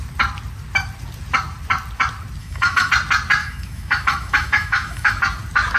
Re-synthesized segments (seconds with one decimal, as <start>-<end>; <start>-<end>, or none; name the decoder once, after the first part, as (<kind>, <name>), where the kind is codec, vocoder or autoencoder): 2.4-2.9 (autoencoder, DAC-VAE); 3.4-5.2